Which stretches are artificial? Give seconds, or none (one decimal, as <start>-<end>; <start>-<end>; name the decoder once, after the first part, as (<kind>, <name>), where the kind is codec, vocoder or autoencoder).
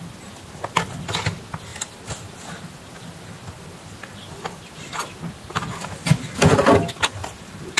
1.7-2.5 (vocoder, BigVGAN v2); 7.2-7.8